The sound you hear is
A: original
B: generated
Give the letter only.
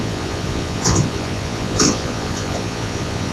B